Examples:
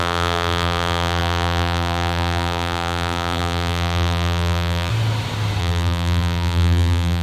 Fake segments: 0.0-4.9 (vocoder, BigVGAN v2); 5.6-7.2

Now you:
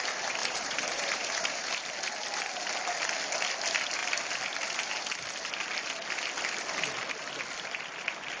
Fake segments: 0.4-1.7 (vocoder, BigVGAN v2)

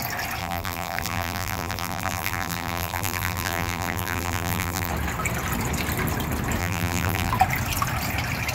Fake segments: 0.4-4.9 (vocoder, BigVGAN v2); 6.6-7.3